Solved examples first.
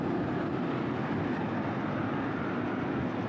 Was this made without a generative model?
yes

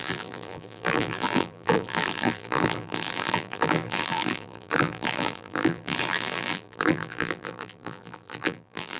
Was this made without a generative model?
no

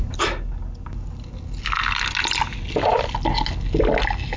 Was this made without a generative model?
yes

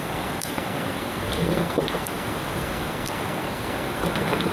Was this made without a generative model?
no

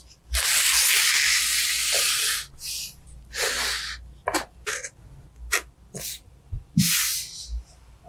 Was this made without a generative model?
yes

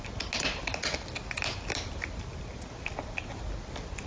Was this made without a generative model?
yes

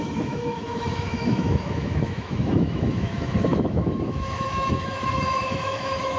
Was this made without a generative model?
no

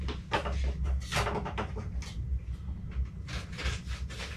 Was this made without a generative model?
yes